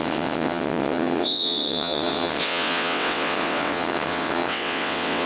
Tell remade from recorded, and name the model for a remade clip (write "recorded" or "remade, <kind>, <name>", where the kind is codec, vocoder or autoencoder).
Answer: remade, vocoder, WaveNeXt